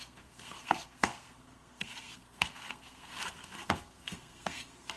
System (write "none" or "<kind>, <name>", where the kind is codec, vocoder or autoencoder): codec, SNAC